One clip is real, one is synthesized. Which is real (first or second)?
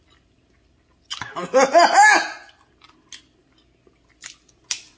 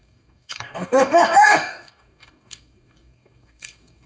first